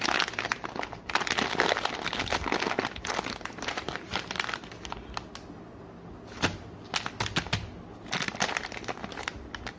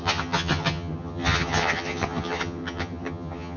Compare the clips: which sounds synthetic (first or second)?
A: second